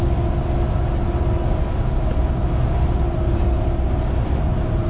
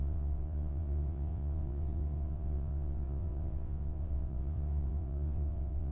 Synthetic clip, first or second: second